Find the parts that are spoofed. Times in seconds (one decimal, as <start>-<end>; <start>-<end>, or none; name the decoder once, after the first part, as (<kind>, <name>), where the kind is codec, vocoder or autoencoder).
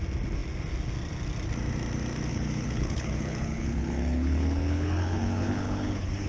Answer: 2.3-6.3 (codec, HILCodec)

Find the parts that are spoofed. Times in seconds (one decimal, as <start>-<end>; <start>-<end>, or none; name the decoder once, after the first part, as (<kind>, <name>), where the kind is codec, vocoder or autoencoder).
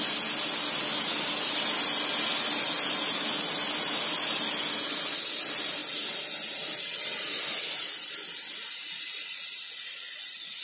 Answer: none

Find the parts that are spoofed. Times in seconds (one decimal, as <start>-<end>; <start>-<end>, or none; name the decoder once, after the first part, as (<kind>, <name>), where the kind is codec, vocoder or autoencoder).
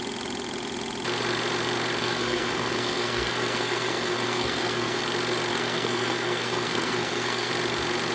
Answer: 2.0-5.0 (codec, SNAC); 5.5-7.5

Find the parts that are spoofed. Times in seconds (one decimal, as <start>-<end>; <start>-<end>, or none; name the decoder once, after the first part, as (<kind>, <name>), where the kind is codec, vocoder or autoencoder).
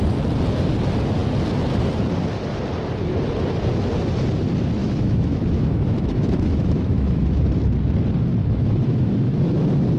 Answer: 4.8-7.4 (autoencoder, DAC-VAE); 8.4-9.5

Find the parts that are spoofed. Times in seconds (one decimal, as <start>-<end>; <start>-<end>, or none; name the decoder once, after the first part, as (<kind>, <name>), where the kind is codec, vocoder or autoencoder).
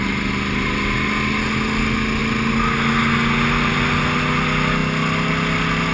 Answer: none